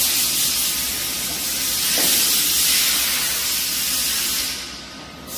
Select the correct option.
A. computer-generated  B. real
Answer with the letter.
B